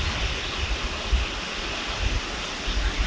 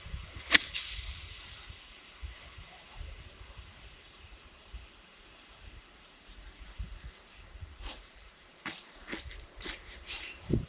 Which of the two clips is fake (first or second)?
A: second